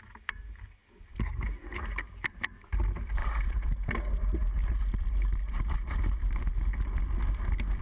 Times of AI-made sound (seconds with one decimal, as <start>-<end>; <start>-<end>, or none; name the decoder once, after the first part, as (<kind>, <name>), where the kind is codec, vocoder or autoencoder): none

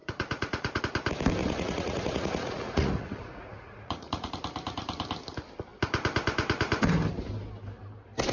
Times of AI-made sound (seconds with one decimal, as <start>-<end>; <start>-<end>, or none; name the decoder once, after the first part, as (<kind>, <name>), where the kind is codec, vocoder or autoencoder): 0.0-0.8 (vocoder, Vocos); 1.4-4.3

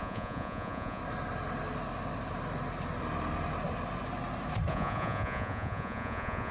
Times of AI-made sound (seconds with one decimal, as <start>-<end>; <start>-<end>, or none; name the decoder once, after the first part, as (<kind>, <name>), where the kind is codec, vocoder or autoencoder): 0.0-1.0 (vocoder, Vocos); 4.7-6.5

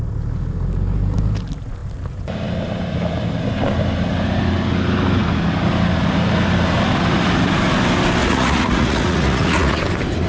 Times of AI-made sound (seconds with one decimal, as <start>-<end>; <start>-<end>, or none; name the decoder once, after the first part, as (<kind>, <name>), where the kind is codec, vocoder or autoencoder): 8.2-9.8 (vocoder, Vocos)